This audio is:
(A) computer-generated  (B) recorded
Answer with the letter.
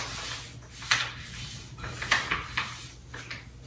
B